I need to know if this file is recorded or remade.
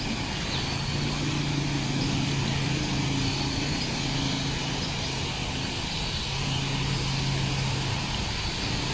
recorded